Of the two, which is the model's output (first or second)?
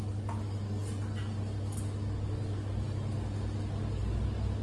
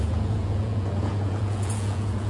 second